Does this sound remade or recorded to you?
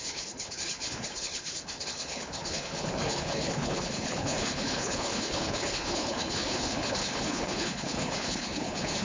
remade